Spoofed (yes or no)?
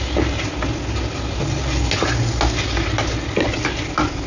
no